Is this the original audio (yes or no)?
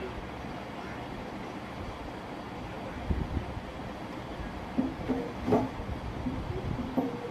yes